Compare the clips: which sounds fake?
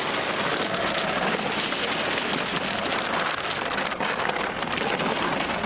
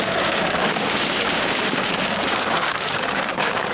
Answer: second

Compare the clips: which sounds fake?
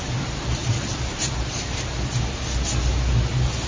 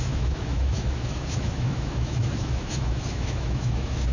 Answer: second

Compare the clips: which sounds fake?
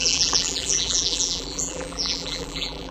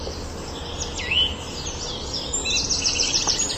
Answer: first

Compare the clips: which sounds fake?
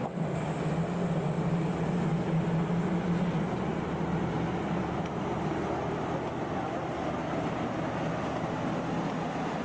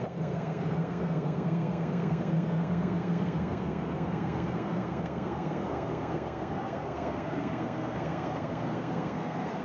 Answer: second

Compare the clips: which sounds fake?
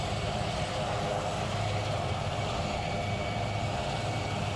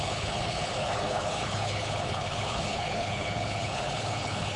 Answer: second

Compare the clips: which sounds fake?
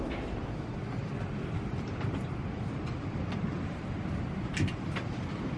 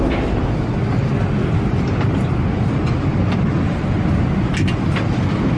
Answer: first